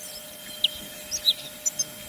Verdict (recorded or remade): recorded